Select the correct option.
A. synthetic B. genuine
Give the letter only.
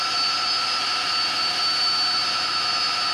B